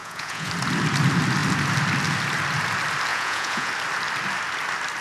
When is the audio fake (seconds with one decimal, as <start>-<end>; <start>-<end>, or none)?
0.0-0.5; 3.1-3.7